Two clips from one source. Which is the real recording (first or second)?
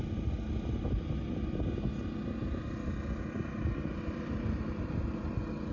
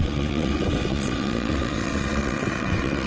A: first